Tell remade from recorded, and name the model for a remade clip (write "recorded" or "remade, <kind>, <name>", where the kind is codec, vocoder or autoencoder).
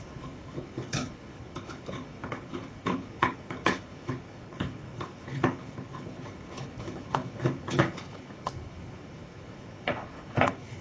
remade, codec, HILCodec